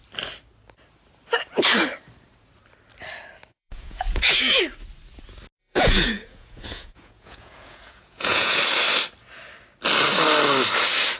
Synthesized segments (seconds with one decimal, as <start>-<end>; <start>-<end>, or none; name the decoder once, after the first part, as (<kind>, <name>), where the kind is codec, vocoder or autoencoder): 3.5-4.6 (vocoder, Vocos); 5.6-8.6